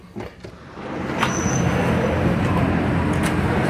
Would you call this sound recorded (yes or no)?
yes